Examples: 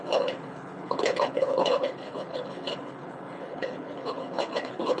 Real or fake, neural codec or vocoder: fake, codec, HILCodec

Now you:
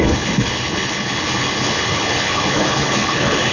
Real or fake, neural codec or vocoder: fake, codec, HILCodec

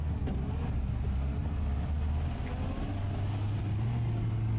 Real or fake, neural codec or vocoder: real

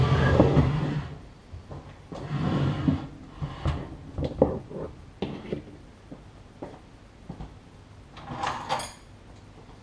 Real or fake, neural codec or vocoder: real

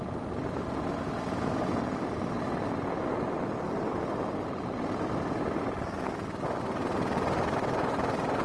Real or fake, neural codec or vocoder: real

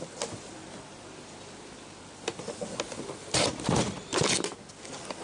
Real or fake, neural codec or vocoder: real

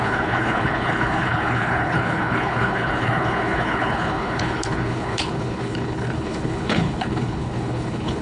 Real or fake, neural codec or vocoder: fake, codec, HILCodec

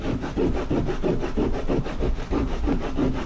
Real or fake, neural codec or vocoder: real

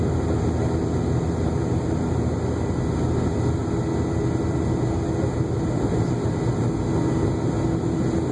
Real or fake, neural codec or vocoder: real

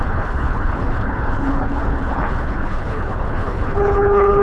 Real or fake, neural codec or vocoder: fake, codec, HILCodec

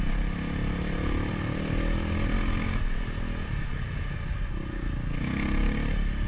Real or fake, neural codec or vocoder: real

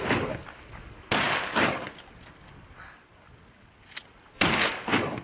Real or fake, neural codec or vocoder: real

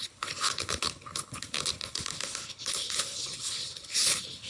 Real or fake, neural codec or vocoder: fake, codec, HILCodec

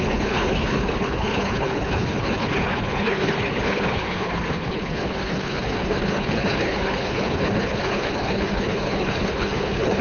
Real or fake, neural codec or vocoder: fake, codec, HILCodec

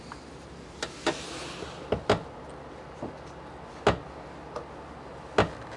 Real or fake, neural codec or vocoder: real